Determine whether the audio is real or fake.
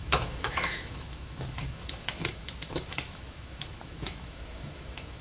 fake